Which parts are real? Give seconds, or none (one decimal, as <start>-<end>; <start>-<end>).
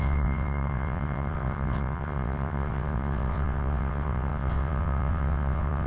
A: none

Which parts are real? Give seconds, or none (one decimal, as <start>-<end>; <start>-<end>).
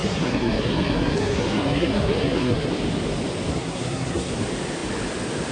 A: 2.7-3.5; 4.3-5.5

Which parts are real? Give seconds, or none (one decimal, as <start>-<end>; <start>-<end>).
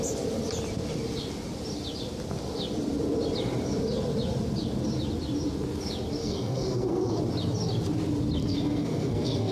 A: 0.0-6.2; 7.2-8.4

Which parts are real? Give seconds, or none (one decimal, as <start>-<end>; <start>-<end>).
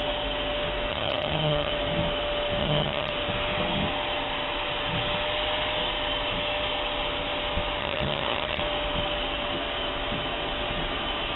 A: 0.0-0.9; 1.7-2.6; 3.1-7.8; 8.6-11.4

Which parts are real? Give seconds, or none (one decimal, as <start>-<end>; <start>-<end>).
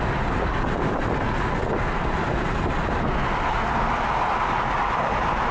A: 0.0-5.5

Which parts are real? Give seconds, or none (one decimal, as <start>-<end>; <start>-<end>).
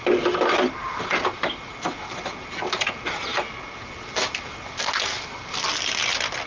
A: 0.0-6.5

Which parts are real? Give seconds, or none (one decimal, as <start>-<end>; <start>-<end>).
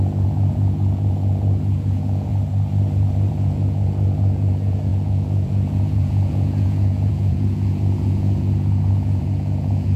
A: 2.3-3.3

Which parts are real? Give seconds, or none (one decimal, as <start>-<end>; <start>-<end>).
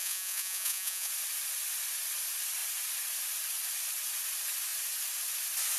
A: 1.1-5.8